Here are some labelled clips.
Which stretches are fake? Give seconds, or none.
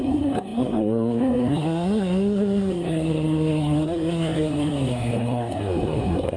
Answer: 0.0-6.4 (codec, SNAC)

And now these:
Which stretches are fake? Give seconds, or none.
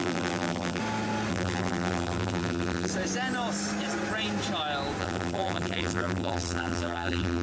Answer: 0.0-0.8 (vocoder, BigVGAN v2); 1.3-2.9; 5.0-7.4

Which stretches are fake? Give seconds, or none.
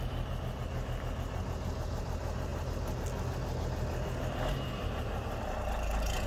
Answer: none